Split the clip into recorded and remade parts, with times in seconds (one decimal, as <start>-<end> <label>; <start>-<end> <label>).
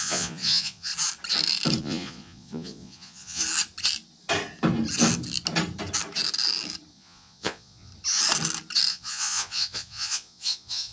0.0-0.9 remade; 0.9-1.8 recorded; 1.8-3.4 remade; 3.4-6.9 recorded; 6.9-7.9 remade; 7.9-8.9 recorded; 8.9-10.9 remade